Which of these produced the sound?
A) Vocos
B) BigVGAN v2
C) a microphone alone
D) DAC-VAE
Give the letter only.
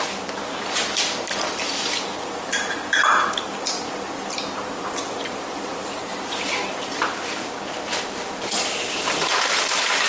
B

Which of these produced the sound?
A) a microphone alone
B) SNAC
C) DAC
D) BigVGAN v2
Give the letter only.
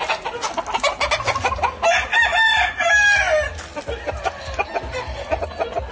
A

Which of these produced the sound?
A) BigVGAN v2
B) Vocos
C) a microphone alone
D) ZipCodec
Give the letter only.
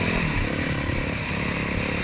C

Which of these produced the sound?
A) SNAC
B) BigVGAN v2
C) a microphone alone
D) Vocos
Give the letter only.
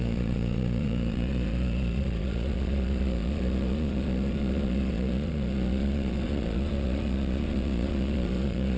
D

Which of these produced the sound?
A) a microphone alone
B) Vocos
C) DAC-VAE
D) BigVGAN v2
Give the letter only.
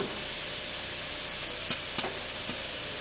A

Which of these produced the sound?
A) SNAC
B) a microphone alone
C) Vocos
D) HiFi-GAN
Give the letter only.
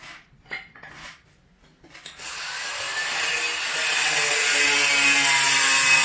B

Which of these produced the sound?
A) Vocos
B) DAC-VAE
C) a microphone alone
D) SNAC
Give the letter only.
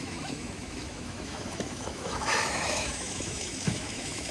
B